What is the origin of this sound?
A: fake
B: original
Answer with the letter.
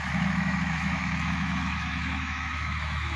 A